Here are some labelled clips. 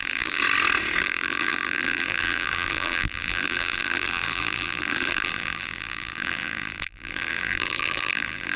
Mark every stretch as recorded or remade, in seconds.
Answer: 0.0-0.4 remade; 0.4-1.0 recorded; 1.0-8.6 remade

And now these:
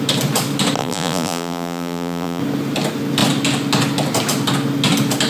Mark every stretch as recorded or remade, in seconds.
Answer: 0.0-0.8 recorded; 0.8-2.4 remade; 2.4-5.3 recorded

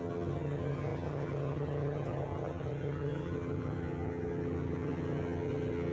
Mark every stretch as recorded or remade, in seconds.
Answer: 0.0-5.9 remade